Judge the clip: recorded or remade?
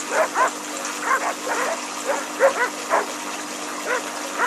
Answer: recorded